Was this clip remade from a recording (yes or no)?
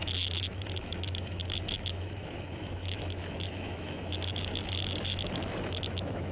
yes